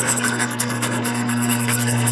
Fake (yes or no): yes